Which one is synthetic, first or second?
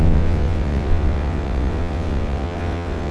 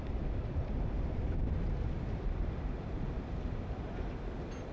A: first